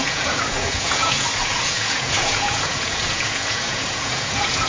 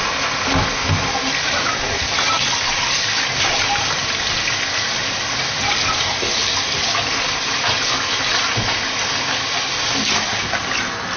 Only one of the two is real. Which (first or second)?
second